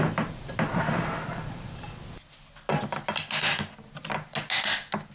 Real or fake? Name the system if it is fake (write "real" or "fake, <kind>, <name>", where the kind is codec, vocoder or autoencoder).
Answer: real